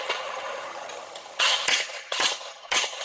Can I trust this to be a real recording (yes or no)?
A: no